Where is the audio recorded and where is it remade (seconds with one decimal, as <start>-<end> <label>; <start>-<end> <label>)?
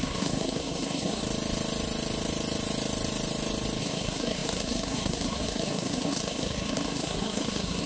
0.0-1.2 remade; 1.2-3.8 recorded; 3.8-7.9 remade